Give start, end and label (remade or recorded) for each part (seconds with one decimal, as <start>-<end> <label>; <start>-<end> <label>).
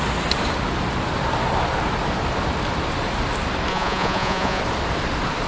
0.0-3.7 recorded; 3.7-4.6 remade; 4.6-5.5 recorded